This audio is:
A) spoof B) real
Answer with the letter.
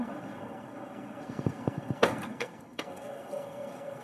A